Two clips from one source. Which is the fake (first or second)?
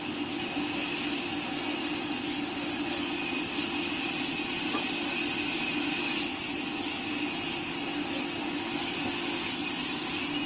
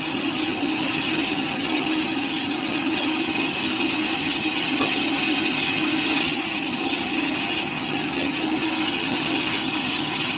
second